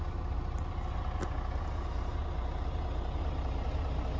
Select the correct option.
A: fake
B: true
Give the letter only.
B